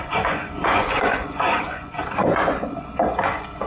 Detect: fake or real fake